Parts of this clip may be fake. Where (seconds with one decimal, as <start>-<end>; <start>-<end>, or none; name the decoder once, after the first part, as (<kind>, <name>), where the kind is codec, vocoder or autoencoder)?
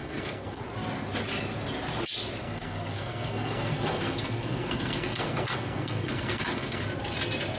0.0-0.6 (codec, SNAC); 2.4-6.8